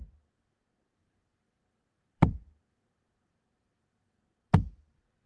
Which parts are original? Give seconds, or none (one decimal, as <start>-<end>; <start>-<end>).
0.0-1.0; 4.2-5.3